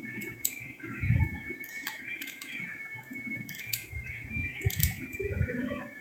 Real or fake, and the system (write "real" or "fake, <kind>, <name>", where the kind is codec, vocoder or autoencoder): fake, autoencoder, DAC-VAE